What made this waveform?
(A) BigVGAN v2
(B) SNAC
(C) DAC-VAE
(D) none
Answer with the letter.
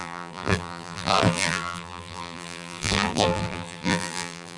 A